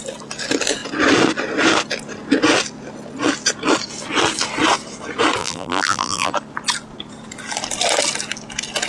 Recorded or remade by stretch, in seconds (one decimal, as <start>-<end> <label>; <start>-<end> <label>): 0.0-5.4 recorded; 5.4-6.3 remade; 6.3-8.9 recorded

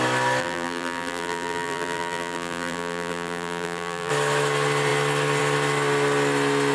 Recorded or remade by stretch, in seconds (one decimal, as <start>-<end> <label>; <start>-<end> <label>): 0.0-0.4 recorded; 0.4-4.1 remade; 4.1-6.7 recorded

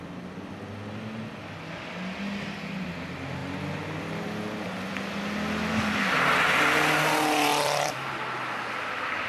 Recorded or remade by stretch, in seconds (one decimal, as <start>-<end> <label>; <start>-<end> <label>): 0.0-7.5 recorded; 7.5-8.1 remade; 8.1-9.3 recorded